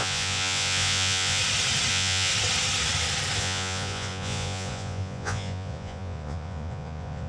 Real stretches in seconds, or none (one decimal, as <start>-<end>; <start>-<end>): 1.4-1.9; 2.3-3.4